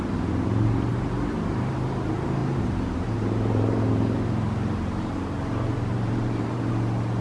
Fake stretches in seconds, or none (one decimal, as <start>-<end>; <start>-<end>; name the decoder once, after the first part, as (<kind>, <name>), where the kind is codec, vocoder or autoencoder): 0.9-1.7 (vocoder, BigVGAN v2); 2.4-6.7